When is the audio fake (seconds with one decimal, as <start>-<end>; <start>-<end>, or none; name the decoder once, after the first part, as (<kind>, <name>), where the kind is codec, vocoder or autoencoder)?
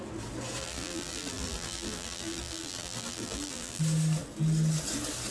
0.6-3.8 (vocoder, BigVGAN v2)